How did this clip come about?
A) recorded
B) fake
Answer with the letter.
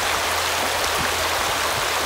A